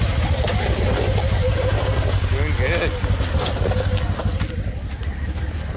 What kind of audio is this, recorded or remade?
recorded